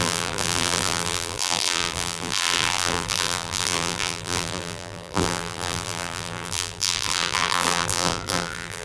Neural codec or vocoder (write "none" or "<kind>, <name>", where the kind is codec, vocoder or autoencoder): vocoder, BigVGAN v2